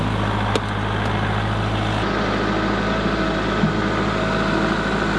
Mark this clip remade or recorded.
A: recorded